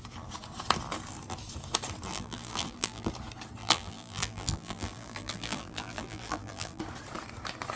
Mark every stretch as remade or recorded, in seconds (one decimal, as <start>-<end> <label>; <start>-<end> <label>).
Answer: 0.0-2.1 recorded; 2.1-3.1 remade; 3.1-3.6 recorded; 3.6-6.8 remade; 6.8-7.8 recorded